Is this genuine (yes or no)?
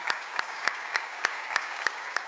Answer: no